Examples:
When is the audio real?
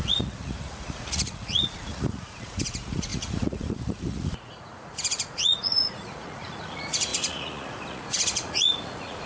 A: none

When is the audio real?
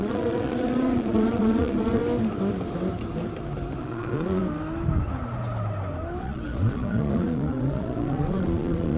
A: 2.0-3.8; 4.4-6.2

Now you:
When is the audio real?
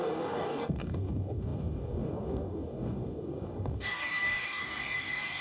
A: none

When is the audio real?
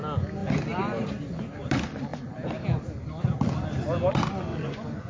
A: 0.0-4.5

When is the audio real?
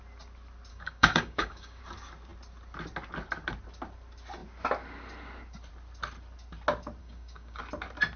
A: 0.0-0.7; 1.8-7.0; 7.6-8.2